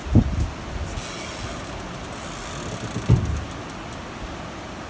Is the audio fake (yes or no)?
no